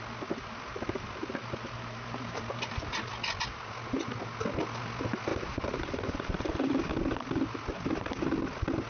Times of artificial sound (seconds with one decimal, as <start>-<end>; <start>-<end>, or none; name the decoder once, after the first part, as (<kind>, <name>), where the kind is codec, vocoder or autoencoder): 1.4-3.1 (vocoder, BigVGAN v2); 5.3-6.9

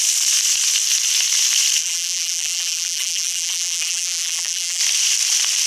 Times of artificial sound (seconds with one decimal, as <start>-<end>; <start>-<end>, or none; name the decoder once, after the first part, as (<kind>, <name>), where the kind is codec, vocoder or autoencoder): 1.8-4.8 (vocoder, BigVGAN v2)

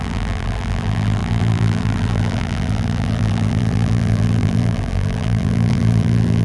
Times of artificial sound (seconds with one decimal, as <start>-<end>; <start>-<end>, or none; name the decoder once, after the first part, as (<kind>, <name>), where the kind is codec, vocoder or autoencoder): 0.0-6.4 (vocoder, BigVGAN v2)

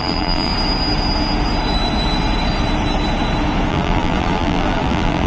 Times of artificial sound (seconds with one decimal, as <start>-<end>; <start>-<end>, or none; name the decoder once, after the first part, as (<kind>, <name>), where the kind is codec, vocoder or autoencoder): 0.0-0.5 (vocoder, BigVGAN v2); 3.7-5.3

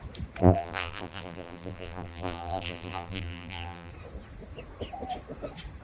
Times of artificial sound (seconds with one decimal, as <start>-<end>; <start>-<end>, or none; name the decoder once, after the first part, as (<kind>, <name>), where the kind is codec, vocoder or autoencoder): 0.4-3.9 (vocoder, BigVGAN v2)